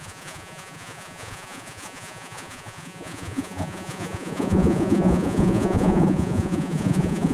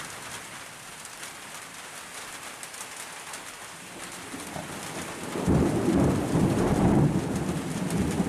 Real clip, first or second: second